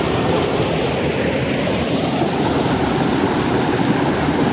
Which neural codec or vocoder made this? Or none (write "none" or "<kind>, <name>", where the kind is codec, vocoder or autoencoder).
none